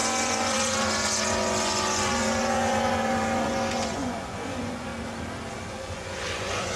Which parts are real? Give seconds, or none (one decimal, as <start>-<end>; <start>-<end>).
4.9-5.6